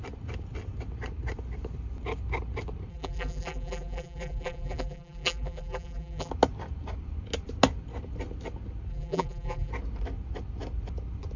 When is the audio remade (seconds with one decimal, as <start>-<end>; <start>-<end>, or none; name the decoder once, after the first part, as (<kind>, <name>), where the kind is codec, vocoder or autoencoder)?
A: 2.9-6.3 (vocoder, BigVGAN v2); 8.9-9.7